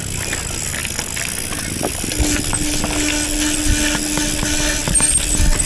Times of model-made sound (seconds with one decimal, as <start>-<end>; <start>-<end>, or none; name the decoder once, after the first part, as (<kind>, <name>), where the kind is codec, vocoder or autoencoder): none